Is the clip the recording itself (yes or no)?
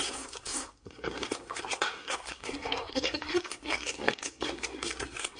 no